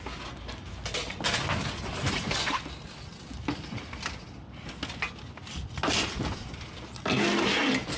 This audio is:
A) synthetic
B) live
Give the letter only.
B